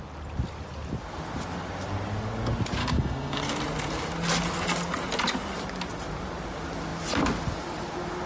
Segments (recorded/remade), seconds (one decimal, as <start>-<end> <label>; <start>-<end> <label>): 0.0-2.8 recorded; 2.8-3.4 remade; 3.4-8.3 recorded